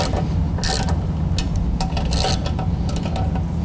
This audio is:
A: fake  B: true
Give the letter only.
B